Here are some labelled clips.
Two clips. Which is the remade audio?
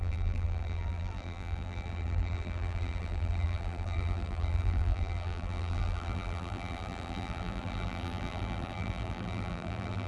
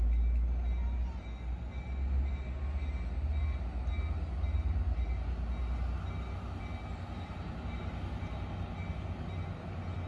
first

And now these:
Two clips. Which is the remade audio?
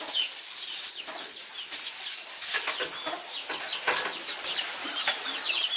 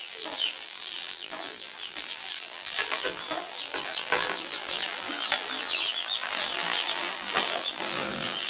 second